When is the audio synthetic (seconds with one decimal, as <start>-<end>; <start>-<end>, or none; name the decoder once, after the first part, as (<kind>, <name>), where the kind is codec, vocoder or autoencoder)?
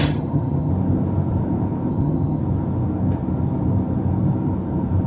0.0-0.7 (vocoder, HiFi-GAN); 1.9-2.4